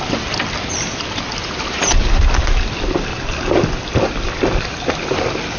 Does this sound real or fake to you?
real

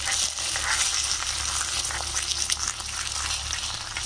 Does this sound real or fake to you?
real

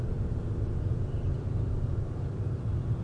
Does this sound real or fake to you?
real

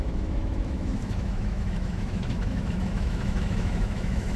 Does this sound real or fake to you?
fake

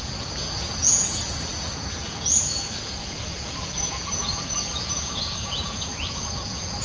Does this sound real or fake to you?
fake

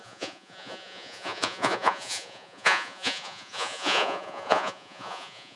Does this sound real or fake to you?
fake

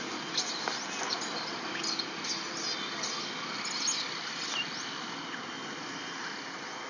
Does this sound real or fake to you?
real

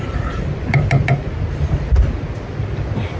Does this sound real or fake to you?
real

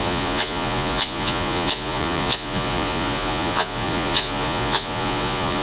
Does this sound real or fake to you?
fake